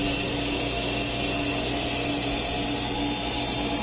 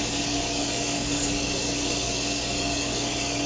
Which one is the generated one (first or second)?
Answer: second